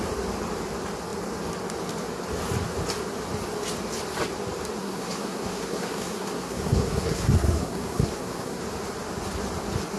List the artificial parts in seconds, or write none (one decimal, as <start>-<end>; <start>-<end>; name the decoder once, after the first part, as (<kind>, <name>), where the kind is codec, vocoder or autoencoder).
4.8-8.6 (codec, SNAC)